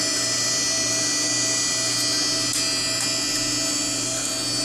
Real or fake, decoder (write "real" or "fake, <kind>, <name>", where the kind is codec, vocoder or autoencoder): real